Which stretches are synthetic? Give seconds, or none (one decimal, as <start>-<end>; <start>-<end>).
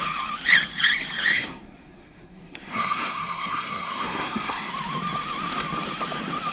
1.3-4.7